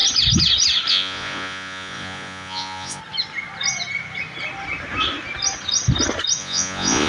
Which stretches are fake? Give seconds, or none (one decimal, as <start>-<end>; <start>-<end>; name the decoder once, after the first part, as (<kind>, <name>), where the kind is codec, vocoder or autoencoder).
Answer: 0.9-3.0 (vocoder, Vocos); 6.4-7.1